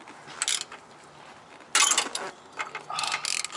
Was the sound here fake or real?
real